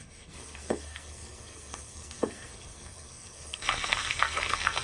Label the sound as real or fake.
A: fake